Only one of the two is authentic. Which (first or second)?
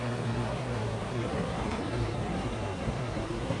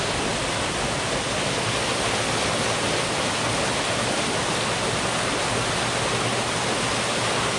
second